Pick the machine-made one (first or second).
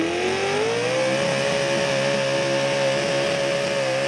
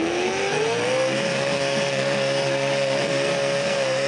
second